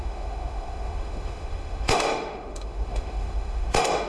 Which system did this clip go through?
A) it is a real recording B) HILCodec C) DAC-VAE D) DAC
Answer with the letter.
C